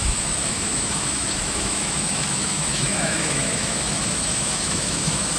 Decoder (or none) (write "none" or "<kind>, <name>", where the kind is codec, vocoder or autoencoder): autoencoder, DAC-VAE